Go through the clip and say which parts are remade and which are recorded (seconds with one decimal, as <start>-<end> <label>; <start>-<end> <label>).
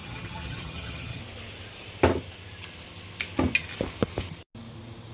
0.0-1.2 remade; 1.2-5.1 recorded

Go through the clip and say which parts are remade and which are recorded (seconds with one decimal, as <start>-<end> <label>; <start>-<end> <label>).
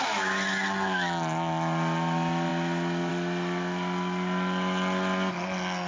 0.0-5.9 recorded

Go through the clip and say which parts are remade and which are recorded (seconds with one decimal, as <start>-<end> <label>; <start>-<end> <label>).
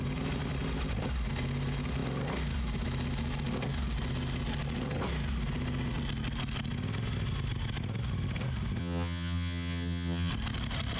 0.0-8.8 recorded; 8.8-10.3 remade; 10.3-11.0 recorded